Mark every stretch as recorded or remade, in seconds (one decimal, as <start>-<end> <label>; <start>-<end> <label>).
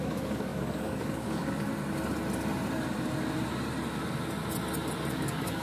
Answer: 0.0-1.7 remade; 1.7-5.1 recorded; 5.1-5.6 remade